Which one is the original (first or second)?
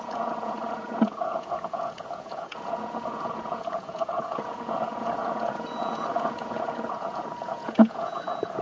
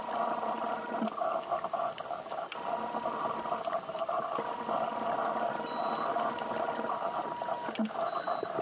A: second